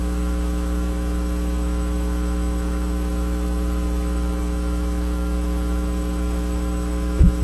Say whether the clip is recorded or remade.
remade